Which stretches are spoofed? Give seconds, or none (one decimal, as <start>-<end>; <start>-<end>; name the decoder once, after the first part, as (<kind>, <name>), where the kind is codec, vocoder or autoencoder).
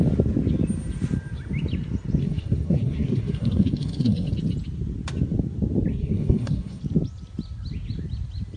2.2-4.3 (codec, SNAC); 5.9-6.8